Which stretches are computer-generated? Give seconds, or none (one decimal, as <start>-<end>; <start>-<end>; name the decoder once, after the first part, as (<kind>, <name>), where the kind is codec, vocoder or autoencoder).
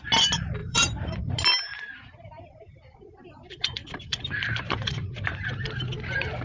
0.6-1.2 (vocoder, BigVGAN v2); 1.7-5.5